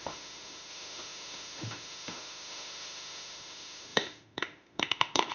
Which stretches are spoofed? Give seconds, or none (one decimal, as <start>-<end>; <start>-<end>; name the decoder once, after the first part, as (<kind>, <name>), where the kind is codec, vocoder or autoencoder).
0.0-5.3 (autoencoder, DAC-VAE)